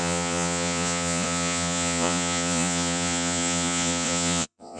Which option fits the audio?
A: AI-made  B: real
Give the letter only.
A